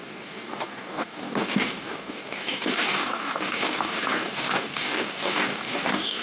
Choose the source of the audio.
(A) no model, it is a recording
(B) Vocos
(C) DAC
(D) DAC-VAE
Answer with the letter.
C